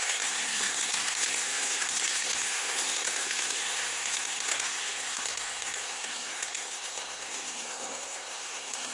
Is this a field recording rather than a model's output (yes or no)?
no